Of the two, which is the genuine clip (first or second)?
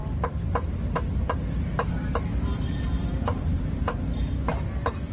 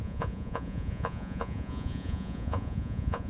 first